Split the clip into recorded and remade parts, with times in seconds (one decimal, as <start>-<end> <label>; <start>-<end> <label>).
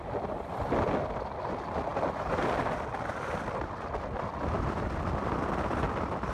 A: 0.0-6.3 recorded